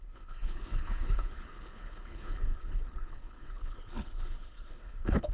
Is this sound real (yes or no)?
no